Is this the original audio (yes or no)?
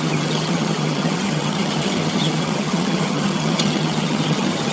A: no